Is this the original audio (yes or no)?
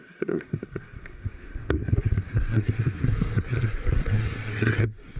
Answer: no